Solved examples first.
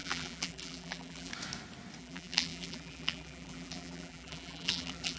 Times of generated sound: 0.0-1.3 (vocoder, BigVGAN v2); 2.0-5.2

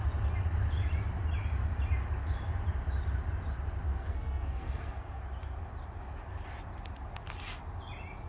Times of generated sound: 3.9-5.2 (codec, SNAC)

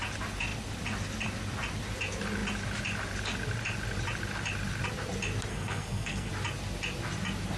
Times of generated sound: 5.5-6.3 (codec, SNAC)

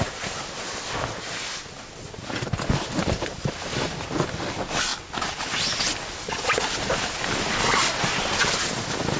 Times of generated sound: none

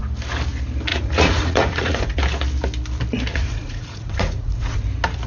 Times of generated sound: 0.9-2.2 (vocoder, Vocos); 3.3-4.8